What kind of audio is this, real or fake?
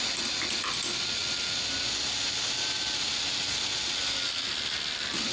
real